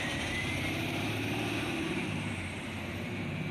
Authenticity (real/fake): fake